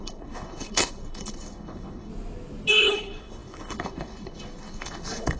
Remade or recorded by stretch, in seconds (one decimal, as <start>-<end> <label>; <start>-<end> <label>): 0.0-2.1 remade; 2.1-2.7 recorded; 2.7-5.4 remade

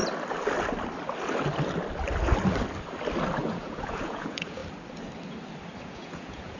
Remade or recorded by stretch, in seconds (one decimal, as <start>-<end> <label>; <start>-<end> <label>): 0.0-3.4 recorded; 3.4-4.6 remade; 4.6-5.8 recorded; 5.8-6.6 remade